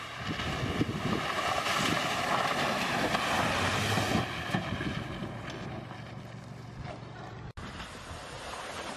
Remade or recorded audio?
recorded